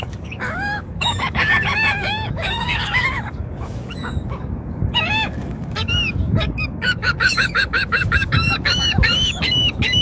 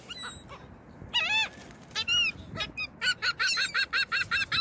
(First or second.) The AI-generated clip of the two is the first